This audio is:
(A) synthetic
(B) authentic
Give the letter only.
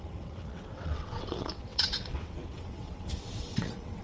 A